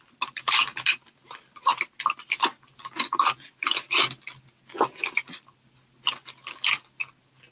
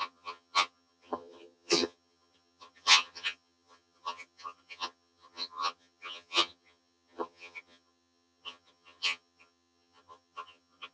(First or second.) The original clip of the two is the first